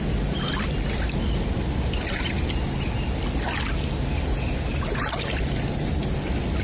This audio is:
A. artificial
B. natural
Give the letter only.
B